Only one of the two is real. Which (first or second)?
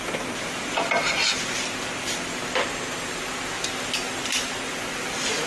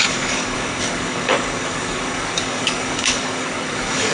first